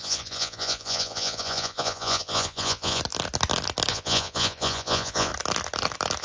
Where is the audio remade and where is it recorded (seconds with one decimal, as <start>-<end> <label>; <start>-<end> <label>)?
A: 0.0-3.0 remade; 3.0-3.9 recorded; 3.9-5.3 remade; 5.3-6.2 recorded